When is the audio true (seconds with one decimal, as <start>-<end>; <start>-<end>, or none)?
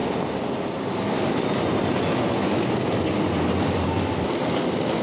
0.0-5.0